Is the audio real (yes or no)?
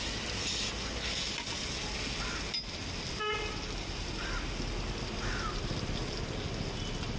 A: yes